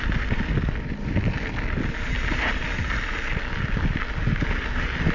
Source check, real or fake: real